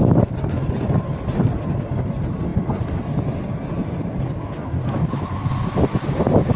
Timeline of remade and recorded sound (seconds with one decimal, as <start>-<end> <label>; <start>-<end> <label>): 0.0-6.6 remade